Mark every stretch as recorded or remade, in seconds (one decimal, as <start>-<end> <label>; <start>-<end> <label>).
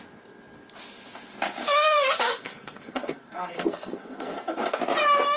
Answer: 0.0-1.6 recorded; 1.6-4.8 remade; 4.8-5.4 recorded